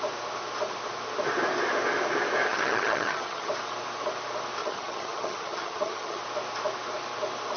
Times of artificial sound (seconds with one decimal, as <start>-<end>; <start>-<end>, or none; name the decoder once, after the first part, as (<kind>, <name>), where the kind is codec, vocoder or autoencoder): 2.5-3.5 (vocoder, HiFi-GAN); 4.6-6.2